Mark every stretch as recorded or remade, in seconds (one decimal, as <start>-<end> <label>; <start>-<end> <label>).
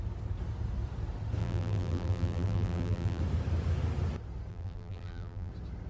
0.0-1.4 recorded; 1.4-3.2 remade; 3.2-4.5 recorded; 4.5-5.5 remade; 5.5-5.9 recorded